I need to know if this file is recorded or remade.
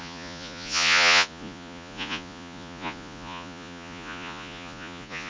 remade